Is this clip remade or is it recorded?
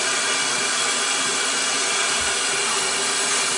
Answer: recorded